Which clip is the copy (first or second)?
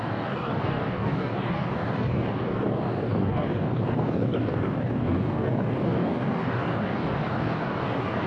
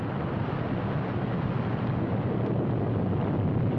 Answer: first